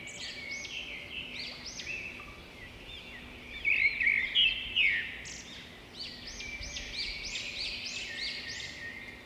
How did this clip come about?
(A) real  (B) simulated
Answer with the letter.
A